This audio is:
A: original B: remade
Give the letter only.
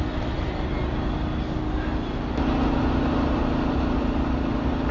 A